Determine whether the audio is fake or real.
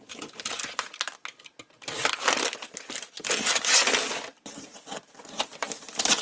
real